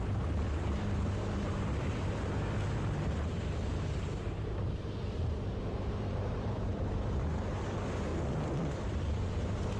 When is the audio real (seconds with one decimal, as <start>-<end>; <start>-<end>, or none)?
8.1-8.8